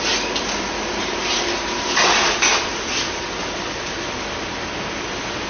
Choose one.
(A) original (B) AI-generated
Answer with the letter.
A